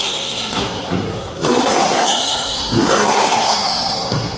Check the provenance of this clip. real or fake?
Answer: fake